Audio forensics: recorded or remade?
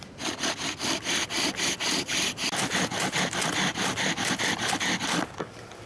recorded